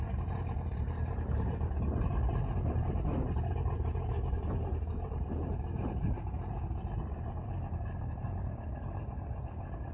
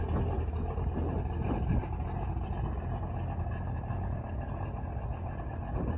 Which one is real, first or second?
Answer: second